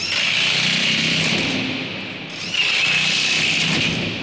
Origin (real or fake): real